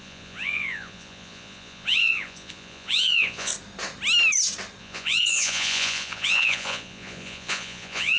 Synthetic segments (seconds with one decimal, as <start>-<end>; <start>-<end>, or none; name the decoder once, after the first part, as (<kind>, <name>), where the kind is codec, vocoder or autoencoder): 0.0-3.5 (vocoder, Vocos); 4.8-8.2